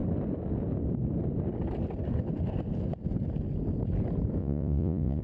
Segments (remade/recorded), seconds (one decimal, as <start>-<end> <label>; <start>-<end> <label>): 0.0-4.4 recorded; 4.4-5.2 remade